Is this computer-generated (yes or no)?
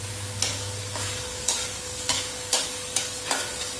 yes